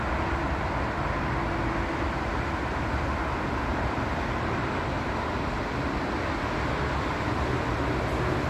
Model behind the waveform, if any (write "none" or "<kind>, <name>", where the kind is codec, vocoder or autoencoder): none